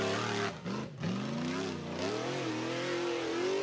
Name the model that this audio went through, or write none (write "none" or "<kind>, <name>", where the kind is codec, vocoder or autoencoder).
none